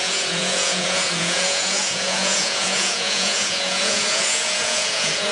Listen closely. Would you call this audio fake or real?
fake